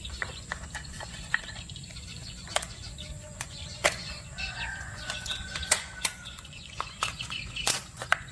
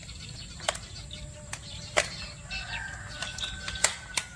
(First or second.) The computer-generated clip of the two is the first